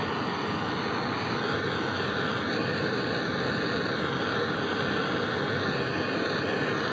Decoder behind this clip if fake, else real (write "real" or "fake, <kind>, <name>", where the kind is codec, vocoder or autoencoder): real